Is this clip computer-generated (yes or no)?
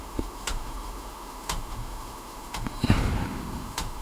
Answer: yes